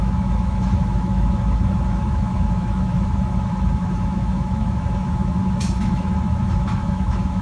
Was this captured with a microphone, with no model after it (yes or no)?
no